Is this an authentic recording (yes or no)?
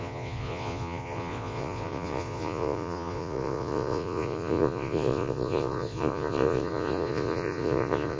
no